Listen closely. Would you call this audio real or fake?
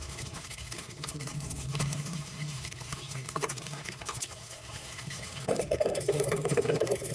fake